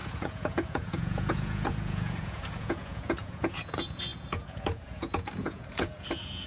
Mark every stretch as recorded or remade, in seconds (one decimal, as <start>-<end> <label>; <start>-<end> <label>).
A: 0.0-6.5 remade